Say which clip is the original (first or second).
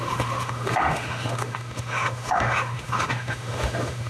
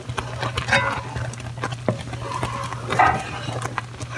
second